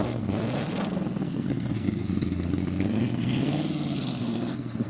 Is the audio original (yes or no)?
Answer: no